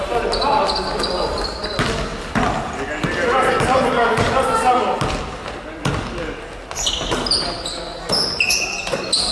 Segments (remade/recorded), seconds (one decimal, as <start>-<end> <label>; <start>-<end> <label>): 0.0-9.3 recorded